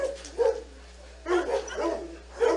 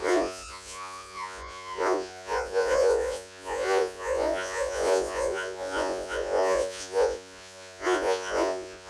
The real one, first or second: first